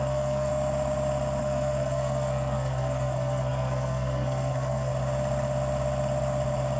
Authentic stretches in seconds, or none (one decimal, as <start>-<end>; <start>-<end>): 0.5-1.4; 4.9-6.8

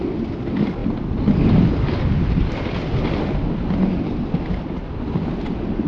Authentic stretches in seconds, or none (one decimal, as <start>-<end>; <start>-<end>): 0.0-5.9

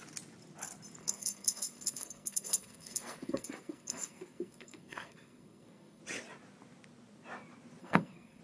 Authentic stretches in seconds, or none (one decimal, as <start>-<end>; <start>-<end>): 0.0-1.0; 6.0-7.8

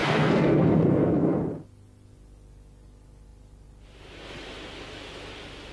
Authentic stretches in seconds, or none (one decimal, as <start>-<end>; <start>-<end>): 1.4-5.7

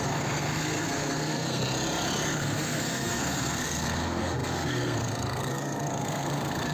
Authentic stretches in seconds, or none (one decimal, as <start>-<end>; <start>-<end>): 1.6-2.3

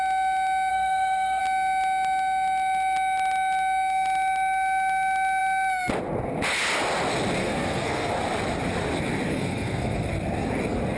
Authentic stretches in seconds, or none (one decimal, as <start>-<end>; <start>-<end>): 0.0-0.7; 1.4-7.4; 8.1-9.3; 10.1-11.0